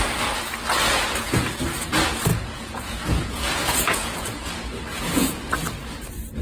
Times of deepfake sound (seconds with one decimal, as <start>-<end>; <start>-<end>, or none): 2.3-4.5; 4.9-5.4